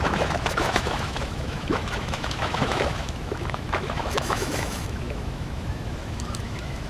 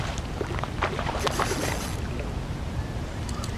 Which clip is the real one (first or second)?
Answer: second